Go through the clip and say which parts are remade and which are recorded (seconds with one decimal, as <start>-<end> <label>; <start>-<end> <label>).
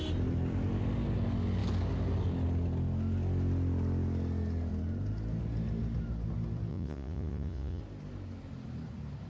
0.0-6.7 recorded; 6.7-7.8 remade; 7.8-9.3 recorded